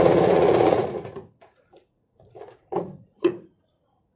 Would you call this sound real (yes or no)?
no